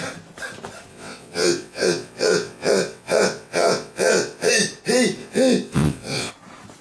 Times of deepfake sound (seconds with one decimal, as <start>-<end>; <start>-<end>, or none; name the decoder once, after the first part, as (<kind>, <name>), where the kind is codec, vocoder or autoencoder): 0.9-4.5 (vocoder, WaveNeXt); 5.2-6.3